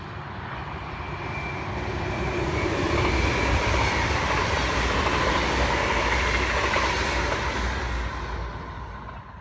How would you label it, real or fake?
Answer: real